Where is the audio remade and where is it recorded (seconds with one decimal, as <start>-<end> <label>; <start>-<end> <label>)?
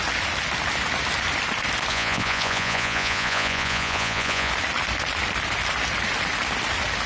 0.0-1.9 recorded; 1.9-4.5 remade; 4.5-7.1 recorded